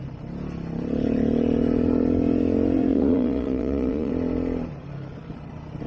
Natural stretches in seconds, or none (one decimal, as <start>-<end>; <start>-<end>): 0.0-2.9; 4.1-5.9